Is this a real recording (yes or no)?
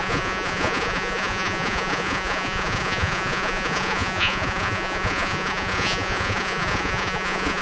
no